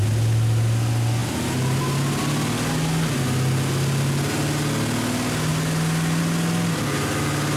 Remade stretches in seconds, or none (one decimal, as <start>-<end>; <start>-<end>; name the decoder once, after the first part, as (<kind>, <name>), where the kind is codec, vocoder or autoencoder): none